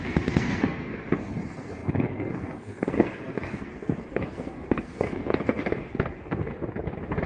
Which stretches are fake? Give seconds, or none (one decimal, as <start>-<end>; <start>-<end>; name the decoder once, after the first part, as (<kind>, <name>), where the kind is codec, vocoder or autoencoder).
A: 0.0-6.5 (codec, SNAC)